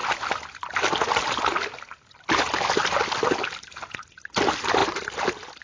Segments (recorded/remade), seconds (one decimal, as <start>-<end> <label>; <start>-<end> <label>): 0.0-5.6 recorded